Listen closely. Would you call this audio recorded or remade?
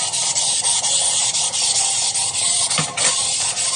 recorded